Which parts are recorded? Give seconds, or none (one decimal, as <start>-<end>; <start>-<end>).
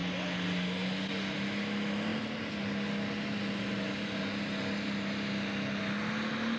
0.0-6.6